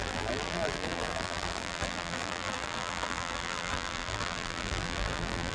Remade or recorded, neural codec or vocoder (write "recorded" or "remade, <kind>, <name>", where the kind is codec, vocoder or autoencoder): remade, vocoder, BigVGAN v2